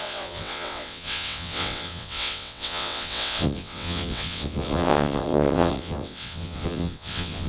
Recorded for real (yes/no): no